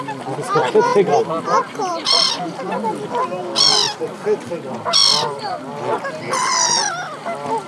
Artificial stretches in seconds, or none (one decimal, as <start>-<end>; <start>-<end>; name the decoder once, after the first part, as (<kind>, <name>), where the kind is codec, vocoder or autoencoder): none